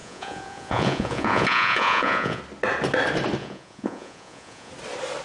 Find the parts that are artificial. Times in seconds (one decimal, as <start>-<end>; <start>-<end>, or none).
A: 0.0-2.4; 3.4-4.7